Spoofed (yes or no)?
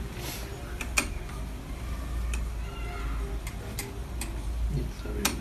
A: no